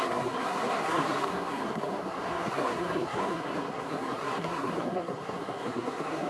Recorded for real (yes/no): no